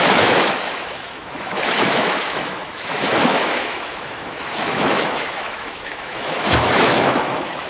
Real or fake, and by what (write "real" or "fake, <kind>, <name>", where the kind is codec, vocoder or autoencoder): fake, autoencoder, DAC-VAE